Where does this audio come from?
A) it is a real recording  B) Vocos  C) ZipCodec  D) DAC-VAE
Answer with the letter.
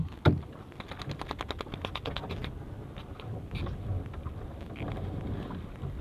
A